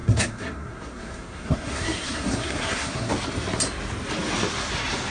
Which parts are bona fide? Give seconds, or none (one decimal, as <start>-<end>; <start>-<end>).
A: 3.1-5.1